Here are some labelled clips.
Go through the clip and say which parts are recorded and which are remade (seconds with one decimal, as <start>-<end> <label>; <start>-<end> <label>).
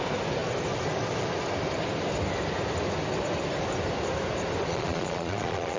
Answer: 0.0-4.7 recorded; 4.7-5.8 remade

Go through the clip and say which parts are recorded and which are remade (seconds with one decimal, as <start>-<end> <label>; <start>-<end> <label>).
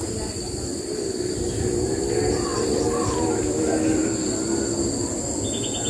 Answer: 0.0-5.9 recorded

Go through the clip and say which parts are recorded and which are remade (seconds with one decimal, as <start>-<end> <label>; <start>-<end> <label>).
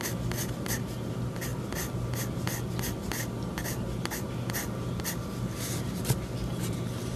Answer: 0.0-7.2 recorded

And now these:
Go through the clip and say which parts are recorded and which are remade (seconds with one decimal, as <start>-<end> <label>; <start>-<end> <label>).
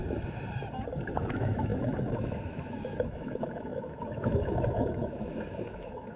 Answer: 0.0-1.2 recorded; 1.2-6.2 remade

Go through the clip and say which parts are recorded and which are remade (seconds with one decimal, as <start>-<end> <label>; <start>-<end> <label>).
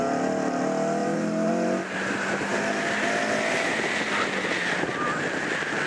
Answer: 0.0-1.0 recorded; 1.0-1.5 remade; 1.5-5.9 recorded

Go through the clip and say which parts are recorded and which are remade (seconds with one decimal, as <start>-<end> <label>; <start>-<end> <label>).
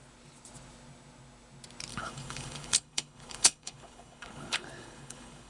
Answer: 0.0-1.9 recorded; 1.9-5.5 remade